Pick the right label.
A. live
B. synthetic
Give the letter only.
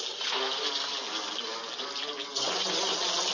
A